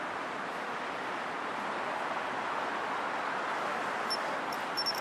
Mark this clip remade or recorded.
recorded